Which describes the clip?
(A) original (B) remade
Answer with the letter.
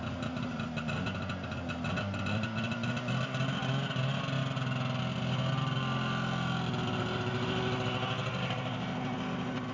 A